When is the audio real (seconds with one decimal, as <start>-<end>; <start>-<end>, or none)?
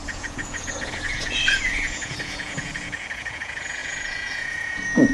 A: none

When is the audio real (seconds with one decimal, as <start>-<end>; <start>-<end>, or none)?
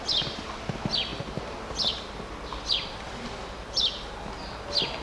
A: 0.0-5.0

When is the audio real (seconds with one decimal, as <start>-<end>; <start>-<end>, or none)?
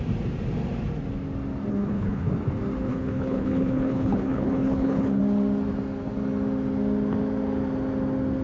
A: 0.0-1.7; 2.3-2.9; 5.2-8.4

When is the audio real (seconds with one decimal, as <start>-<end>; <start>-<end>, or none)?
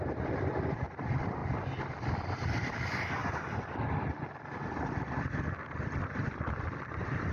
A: 1.4-2.1; 3.2-4.9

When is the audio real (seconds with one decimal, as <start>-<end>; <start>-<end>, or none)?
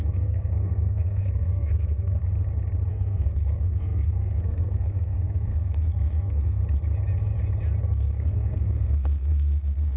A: 2.2-2.9; 6.6-7.8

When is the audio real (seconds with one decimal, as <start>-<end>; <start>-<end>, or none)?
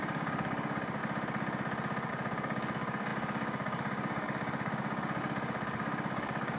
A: 1.0-2.1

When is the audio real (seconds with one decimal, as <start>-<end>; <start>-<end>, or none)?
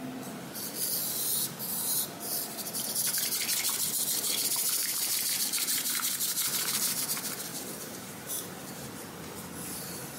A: 0.0-4.8; 7.0-7.5; 8.3-10.2